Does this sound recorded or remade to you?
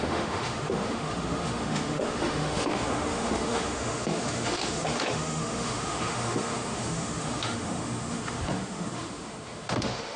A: remade